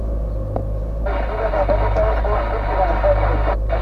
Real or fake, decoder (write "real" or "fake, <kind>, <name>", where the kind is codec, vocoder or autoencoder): real